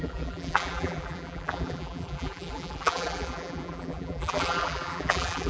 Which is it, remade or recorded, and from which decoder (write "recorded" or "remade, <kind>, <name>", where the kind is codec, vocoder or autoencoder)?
remade, vocoder, BigVGAN v2